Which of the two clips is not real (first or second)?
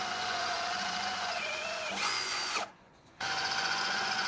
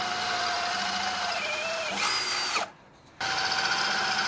first